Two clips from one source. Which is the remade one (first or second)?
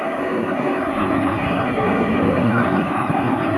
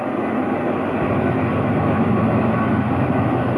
first